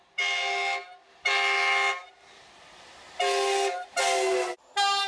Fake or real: real